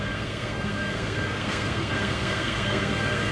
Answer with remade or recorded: remade